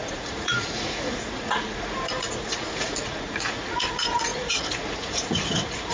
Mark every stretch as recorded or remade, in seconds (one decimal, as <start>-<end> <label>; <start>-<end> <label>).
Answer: 0.0-5.9 remade